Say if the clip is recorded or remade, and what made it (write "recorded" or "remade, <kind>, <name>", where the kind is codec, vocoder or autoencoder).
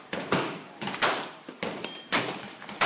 remade, vocoder, BigVGAN v2